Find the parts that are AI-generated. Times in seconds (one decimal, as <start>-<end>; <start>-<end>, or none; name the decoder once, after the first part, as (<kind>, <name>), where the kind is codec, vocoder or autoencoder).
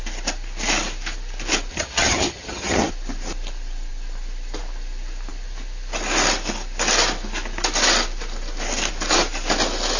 1.7-2.9 (vocoder, HiFi-GAN)